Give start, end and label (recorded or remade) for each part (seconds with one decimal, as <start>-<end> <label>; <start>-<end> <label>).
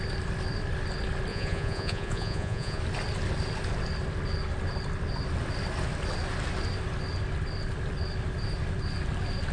0.0-1.3 recorded; 1.3-2.8 remade; 2.8-9.5 recorded